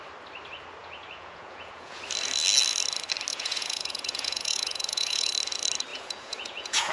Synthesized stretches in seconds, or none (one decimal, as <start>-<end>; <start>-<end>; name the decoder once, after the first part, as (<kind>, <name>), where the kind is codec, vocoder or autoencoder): 0.8-2.0 (vocoder, Vocos); 3.3-5.3; 5.9-6.9